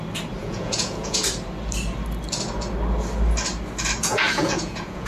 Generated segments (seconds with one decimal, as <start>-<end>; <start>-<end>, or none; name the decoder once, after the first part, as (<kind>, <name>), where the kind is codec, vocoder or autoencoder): 0.4-1.2 (vocoder, Vocos); 4.0-5.1